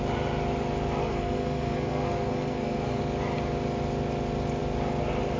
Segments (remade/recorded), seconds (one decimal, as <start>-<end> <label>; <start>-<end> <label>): 0.0-1.0 recorded; 1.0-3.0 remade; 3.0-5.4 recorded